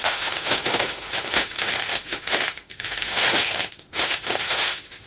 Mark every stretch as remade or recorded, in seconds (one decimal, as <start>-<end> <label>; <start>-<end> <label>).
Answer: 0.0-5.1 remade